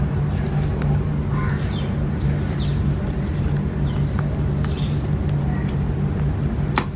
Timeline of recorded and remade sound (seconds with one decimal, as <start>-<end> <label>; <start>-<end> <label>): 0.0-7.0 recorded